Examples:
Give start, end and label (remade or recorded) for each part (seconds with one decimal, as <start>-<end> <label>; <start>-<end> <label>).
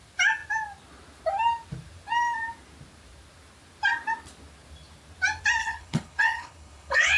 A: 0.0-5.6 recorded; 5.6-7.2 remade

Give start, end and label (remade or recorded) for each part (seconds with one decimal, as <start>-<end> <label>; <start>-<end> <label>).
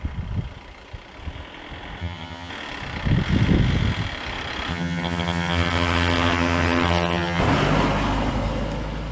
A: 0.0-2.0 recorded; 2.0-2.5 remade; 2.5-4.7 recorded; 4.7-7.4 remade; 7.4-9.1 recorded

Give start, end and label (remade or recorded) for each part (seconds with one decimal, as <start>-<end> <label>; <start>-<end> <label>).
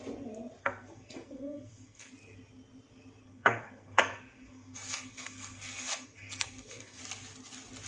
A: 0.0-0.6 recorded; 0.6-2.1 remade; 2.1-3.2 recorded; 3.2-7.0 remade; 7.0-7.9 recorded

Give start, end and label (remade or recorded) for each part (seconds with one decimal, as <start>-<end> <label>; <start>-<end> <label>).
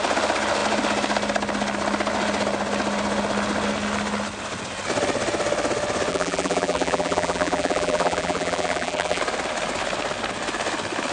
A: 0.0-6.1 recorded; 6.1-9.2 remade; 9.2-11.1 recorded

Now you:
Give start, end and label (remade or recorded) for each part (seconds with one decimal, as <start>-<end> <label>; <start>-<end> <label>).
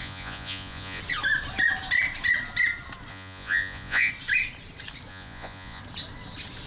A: 0.0-1.0 remade; 1.0-3.1 recorded; 3.1-4.1 remade; 4.1-5.1 recorded; 5.1-5.8 remade; 5.8-6.7 recorded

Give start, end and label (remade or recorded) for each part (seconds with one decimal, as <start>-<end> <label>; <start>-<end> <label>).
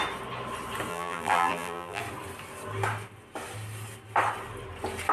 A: 0.0-0.9 recorded; 0.9-2.0 remade; 2.0-5.1 recorded